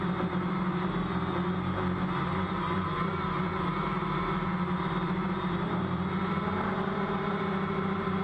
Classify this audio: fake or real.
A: fake